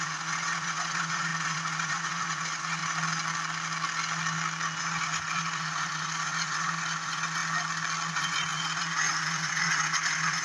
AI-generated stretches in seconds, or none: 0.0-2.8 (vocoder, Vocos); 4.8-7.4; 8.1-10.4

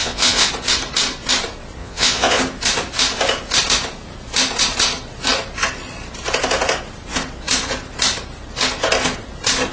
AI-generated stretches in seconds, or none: 0.0-0.5 (vocoder, Vocos); 1.8-2.4